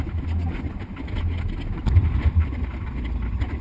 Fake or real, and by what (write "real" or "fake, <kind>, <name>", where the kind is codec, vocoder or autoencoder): real